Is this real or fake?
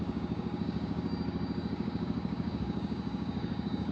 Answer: fake